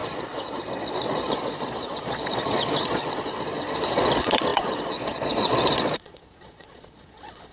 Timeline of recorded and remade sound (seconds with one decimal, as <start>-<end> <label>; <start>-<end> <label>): 0.0-7.5 remade

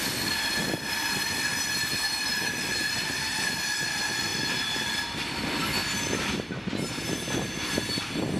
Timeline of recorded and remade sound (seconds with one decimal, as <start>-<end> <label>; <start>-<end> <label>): 0.0-4.3 recorded; 4.3-4.8 remade; 4.8-5.8 recorded; 5.8-7.6 remade; 7.6-8.4 recorded

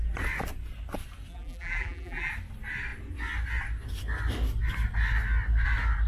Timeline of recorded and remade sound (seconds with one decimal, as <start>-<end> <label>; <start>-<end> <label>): 0.0-1.3 recorded; 1.3-2.3 remade; 2.3-6.1 recorded

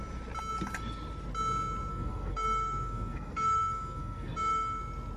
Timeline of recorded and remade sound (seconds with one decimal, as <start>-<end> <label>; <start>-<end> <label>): 0.0-1.9 recorded; 1.9-4.8 remade; 4.8-5.2 recorded

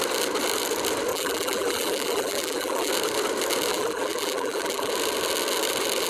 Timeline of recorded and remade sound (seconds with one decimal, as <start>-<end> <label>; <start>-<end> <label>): 0.0-1.1 recorded; 1.1-2.9 remade; 2.9-3.7 recorded; 3.7-4.9 remade; 4.9-6.1 recorded

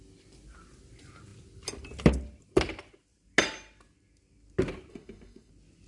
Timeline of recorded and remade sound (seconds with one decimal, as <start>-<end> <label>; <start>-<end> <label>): 0.0-4.9 recorded; 4.9-5.5 remade; 5.5-5.9 recorded

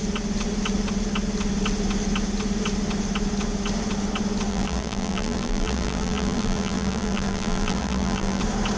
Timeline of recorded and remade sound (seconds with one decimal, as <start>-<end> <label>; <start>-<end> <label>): 0.0-4.5 recorded; 4.5-8.4 remade; 8.4-8.8 recorded